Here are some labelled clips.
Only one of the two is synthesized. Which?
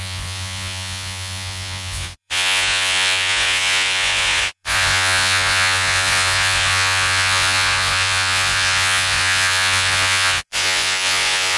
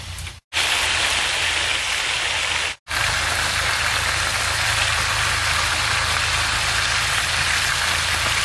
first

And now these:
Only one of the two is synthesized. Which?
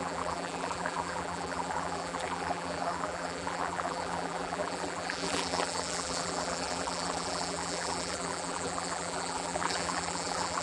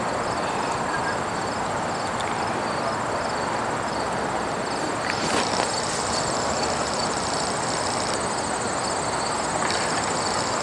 first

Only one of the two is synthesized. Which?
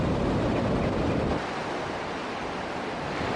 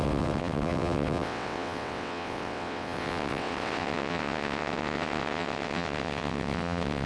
second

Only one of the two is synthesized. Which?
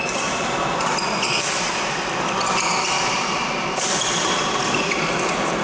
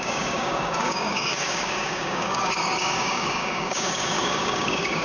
second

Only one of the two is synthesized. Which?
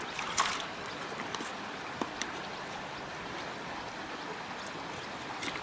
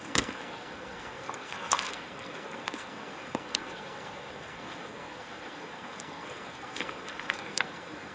second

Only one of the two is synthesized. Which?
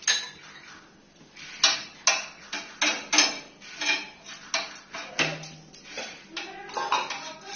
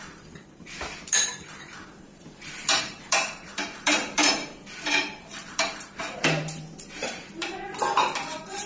second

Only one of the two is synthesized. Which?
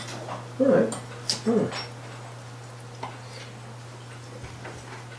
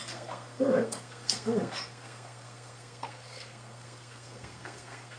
second